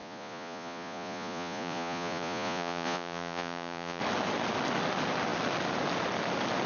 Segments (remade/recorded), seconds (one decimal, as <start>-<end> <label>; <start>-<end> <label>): 0.0-4.0 remade; 4.0-6.7 recorded

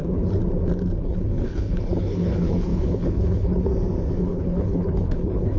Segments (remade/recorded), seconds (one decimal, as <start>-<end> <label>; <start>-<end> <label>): 0.0-0.4 remade; 0.4-1.0 recorded; 1.0-3.7 remade; 3.7-4.2 recorded; 4.2-5.6 remade

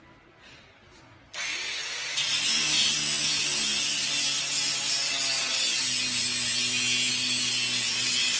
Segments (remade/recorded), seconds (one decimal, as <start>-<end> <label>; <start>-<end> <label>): 0.0-8.4 recorded